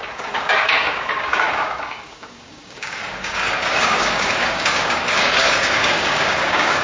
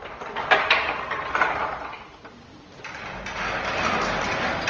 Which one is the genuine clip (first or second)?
second